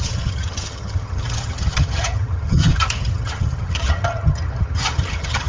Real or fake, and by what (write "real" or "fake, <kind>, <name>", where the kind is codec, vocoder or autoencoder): fake, vocoder, HiFi-GAN